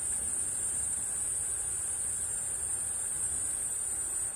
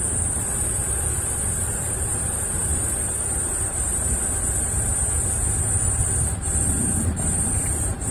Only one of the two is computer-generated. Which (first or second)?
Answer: second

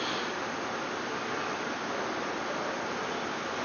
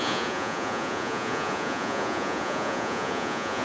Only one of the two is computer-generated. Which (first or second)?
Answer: second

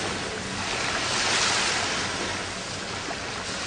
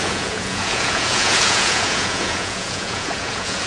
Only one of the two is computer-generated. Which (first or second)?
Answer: second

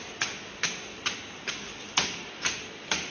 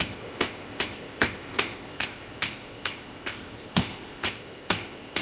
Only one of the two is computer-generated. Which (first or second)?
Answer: second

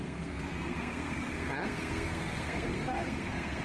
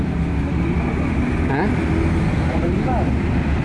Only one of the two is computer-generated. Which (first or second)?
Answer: first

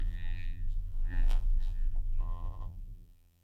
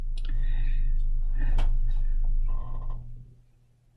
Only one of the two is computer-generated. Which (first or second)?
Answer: first